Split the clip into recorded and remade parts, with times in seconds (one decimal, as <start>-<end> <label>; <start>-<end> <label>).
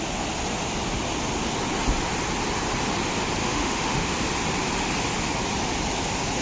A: 0.0-3.4 recorded; 3.4-4.1 remade; 4.1-6.4 recorded